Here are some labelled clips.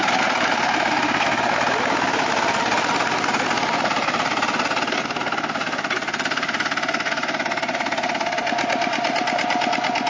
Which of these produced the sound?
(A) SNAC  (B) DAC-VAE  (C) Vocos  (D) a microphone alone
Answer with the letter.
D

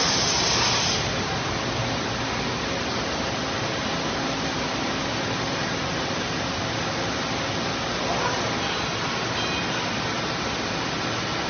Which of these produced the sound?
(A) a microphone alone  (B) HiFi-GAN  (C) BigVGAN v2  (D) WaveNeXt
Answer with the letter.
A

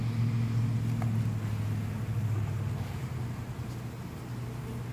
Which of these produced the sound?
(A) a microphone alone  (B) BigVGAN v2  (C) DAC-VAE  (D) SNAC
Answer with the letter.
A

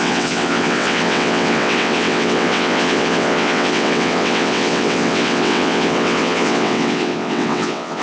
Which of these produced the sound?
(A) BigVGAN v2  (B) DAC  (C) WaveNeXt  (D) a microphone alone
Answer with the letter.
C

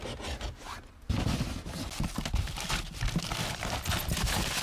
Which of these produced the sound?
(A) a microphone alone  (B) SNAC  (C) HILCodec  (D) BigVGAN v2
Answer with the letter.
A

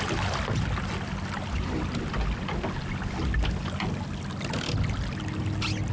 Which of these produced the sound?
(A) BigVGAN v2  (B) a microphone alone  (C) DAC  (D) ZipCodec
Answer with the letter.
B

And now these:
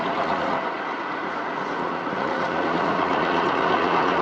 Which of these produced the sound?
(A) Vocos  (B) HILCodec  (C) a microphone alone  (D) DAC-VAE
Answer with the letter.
A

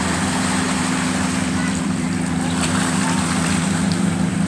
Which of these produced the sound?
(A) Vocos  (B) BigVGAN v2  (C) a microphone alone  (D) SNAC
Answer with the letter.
B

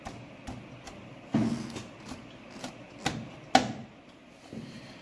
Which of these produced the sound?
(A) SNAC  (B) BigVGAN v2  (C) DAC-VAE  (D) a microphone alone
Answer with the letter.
D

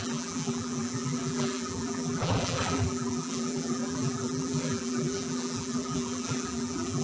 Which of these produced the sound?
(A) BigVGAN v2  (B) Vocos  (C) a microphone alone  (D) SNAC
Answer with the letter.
A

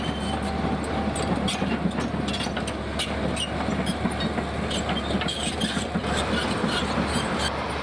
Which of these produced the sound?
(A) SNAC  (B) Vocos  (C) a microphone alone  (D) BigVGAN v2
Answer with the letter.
C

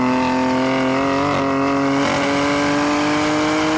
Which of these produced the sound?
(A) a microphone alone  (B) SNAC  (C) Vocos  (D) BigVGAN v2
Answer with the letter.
A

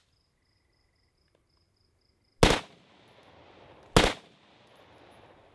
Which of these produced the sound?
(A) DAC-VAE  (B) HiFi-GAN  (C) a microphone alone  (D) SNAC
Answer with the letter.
C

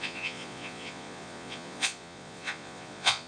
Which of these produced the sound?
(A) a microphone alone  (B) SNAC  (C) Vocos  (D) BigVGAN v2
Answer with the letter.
C